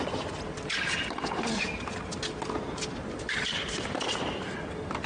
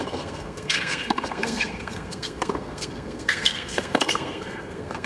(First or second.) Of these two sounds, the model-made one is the second